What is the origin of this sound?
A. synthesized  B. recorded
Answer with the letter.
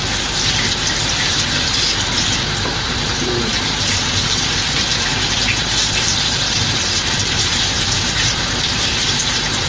A